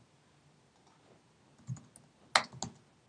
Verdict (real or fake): real